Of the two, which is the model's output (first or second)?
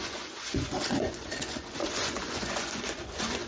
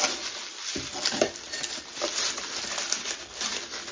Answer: first